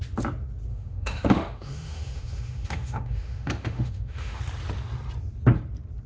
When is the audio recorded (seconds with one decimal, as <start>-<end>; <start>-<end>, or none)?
0.0-0.7; 4.4-6.1